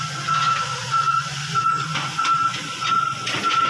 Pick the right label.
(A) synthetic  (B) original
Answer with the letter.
A